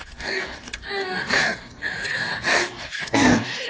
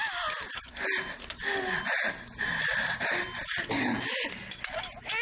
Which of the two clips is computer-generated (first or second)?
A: first